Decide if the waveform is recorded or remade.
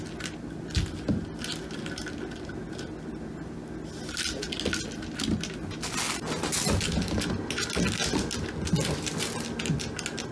recorded